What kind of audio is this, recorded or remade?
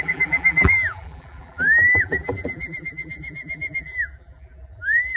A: remade